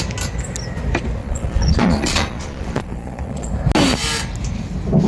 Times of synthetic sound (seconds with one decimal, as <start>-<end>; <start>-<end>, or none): 1.2-3.5